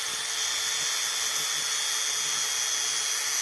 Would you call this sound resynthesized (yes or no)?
no